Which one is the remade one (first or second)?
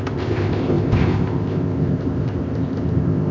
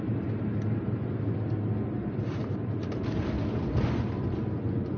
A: first